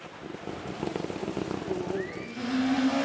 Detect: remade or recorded recorded